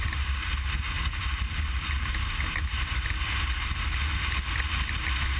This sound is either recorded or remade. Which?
recorded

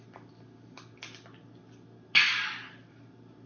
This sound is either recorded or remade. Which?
recorded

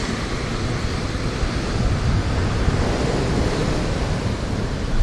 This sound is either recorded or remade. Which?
recorded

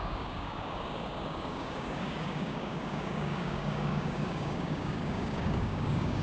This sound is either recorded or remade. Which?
remade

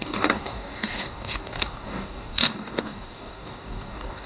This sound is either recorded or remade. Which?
remade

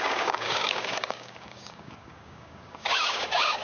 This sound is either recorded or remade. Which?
remade